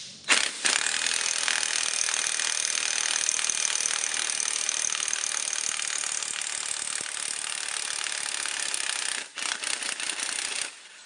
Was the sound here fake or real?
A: real